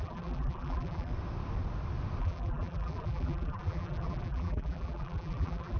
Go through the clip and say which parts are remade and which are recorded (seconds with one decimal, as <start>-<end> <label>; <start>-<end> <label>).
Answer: 0.0-1.1 remade; 1.1-2.2 recorded; 2.2-5.8 remade